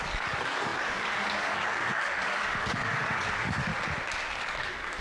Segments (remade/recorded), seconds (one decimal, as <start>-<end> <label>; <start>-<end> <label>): 0.0-3.7 remade; 3.7-4.3 recorded; 4.3-5.0 remade